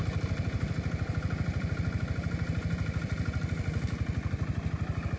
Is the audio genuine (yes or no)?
no